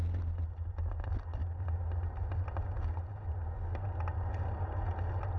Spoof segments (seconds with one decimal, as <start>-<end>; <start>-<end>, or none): none